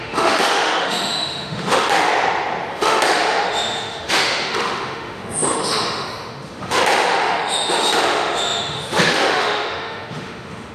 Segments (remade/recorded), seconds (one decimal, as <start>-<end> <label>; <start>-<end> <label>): 0.0-2.1 remade; 2.1-2.7 recorded; 2.7-10.7 remade